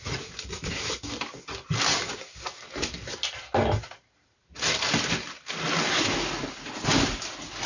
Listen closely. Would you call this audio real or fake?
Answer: real